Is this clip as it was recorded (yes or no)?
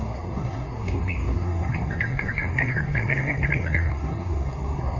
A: no